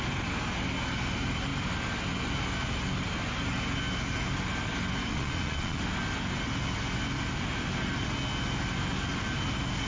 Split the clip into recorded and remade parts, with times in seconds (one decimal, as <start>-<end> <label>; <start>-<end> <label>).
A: 0.0-5.1 recorded; 5.1-5.8 remade; 5.8-9.9 recorded